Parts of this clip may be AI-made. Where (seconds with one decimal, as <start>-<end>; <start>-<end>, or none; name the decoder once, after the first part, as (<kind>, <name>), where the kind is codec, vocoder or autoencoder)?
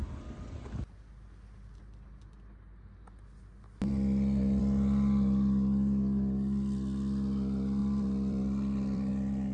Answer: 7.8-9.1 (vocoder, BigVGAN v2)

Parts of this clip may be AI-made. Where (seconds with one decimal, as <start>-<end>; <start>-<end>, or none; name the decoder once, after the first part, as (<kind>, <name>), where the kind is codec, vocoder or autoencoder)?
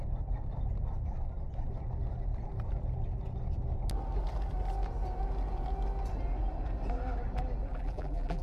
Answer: 7.7-8.4 (vocoder, BigVGAN v2)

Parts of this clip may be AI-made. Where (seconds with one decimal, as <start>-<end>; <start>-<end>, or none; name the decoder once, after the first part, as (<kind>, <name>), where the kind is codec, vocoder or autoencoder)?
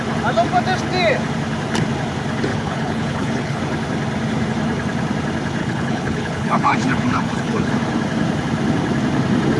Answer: 2.5-3.6 (codec, HILCodec); 5.6-7.7